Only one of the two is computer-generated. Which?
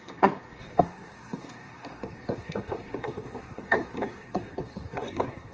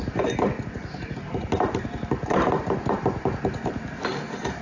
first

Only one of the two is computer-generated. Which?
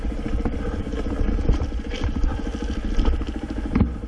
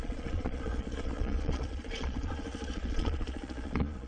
second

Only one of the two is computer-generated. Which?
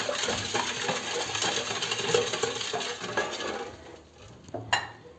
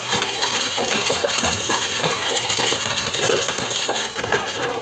second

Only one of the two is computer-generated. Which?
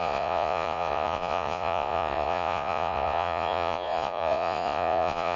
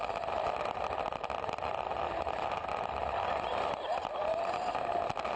first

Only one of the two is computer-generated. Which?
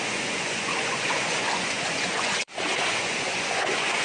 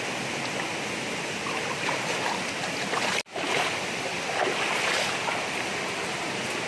first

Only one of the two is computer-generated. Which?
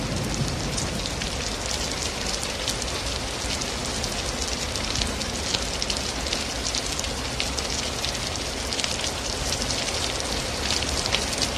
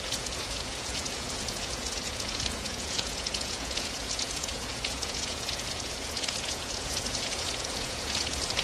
second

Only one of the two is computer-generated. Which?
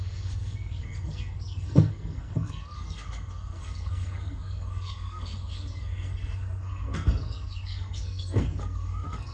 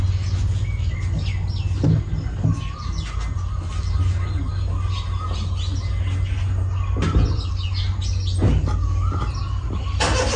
first